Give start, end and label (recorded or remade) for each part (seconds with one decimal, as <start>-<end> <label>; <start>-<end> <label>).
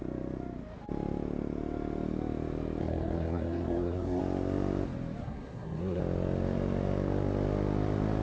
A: 0.0-2.8 recorded; 2.8-4.2 remade; 4.2-5.2 recorded; 5.2-6.0 remade; 6.0-8.2 recorded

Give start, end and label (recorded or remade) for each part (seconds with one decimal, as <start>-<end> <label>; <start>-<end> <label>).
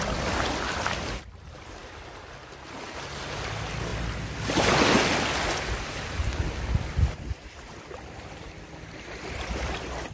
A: 0.0-10.1 recorded